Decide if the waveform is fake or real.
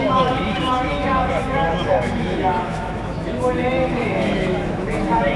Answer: fake